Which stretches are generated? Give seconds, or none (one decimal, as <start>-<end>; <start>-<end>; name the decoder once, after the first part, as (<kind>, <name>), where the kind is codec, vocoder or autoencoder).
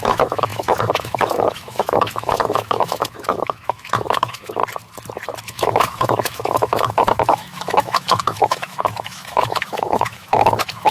0.0-4.6 (autoencoder, DAC-VAE); 5.4-10.9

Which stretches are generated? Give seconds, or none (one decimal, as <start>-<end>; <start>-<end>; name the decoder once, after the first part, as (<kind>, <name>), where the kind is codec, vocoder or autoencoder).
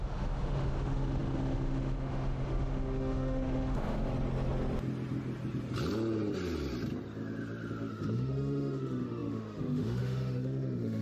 0.0-4.1 (autoencoder, DAC-VAE); 7.9-11.0